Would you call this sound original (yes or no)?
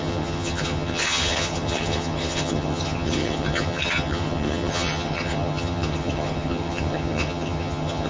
no